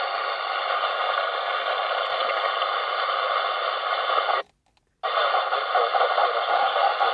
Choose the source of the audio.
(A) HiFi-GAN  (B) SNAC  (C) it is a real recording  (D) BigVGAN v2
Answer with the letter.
C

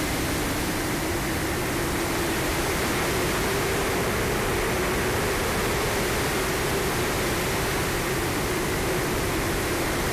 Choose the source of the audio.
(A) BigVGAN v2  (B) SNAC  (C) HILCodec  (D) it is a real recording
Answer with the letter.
D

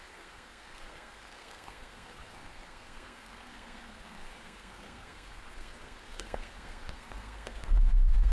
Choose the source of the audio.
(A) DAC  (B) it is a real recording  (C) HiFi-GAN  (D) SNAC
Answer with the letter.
D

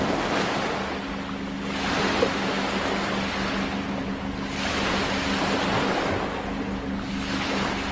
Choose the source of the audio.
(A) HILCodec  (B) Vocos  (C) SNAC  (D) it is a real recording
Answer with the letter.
D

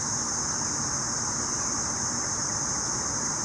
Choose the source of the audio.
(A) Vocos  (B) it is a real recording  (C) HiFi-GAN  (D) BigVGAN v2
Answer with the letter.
D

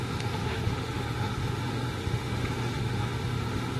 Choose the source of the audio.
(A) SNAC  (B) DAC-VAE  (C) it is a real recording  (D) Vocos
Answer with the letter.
B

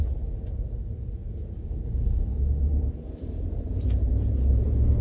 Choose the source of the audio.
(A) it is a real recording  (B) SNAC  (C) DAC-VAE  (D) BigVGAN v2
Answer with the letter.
A